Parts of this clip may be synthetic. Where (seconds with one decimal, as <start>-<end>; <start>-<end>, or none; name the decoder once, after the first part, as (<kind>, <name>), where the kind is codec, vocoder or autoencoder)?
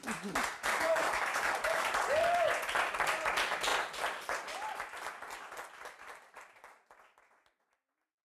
0.7-2.5 (codec, DAC)